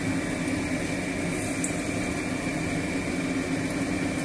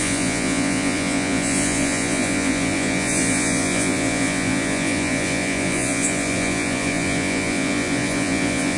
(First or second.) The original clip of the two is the first